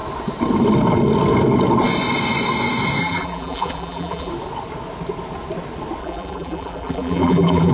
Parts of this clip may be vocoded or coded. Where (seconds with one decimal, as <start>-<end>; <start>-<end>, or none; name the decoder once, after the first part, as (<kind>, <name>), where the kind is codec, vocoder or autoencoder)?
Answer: 3.0-4.3 (vocoder, BigVGAN v2); 6.0-7.7